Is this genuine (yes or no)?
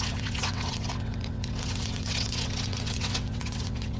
no